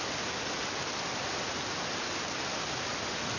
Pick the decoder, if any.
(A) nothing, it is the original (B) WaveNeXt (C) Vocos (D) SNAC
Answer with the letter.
A